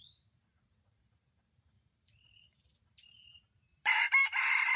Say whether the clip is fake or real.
fake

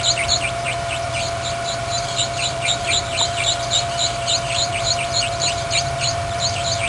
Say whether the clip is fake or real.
fake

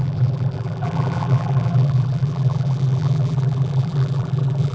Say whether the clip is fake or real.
fake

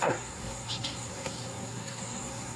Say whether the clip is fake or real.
fake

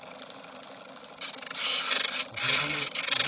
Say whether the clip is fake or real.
real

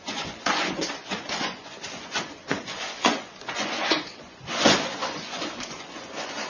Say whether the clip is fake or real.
fake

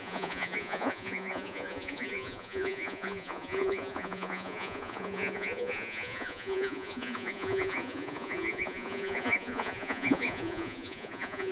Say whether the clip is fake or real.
fake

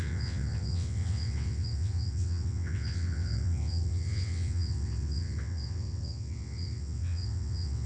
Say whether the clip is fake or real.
fake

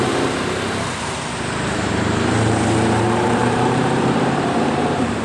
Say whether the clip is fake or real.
fake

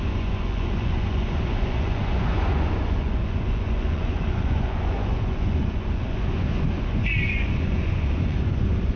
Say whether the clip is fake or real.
fake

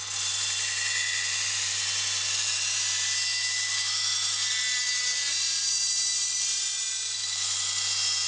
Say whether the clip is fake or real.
real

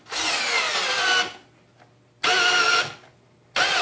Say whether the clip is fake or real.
real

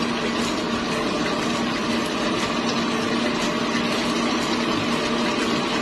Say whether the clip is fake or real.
real